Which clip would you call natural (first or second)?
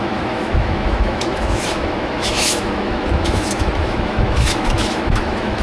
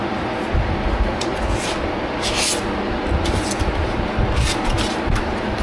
second